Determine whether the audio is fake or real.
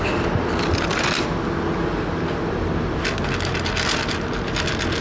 real